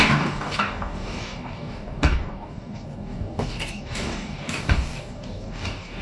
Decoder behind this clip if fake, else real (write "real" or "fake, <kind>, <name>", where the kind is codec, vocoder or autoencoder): fake, codec, DAC